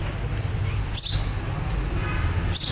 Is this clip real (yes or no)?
yes